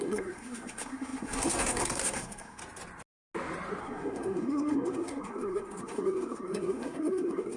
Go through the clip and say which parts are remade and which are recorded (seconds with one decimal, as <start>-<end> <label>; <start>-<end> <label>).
0.0-2.6 remade; 2.6-3.8 recorded; 3.8-7.6 remade